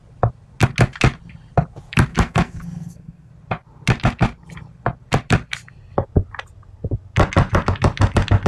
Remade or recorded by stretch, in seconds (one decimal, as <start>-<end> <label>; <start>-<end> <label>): 0.0-2.1 recorded; 2.1-3.3 remade; 3.3-8.5 recorded